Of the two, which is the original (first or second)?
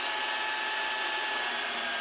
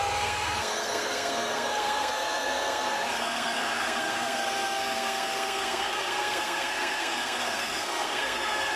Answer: first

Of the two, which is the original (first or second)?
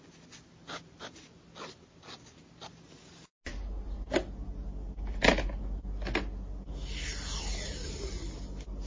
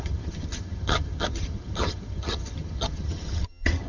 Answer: first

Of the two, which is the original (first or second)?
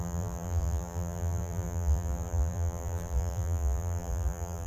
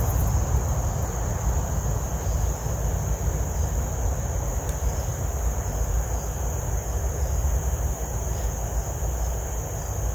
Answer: second